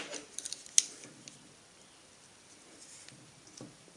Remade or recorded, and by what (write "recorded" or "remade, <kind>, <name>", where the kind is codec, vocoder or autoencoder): recorded